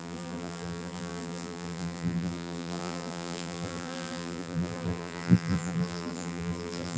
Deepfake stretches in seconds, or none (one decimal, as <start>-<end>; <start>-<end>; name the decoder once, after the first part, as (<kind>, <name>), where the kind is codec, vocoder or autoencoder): 0.0-7.0 (vocoder, BigVGAN v2)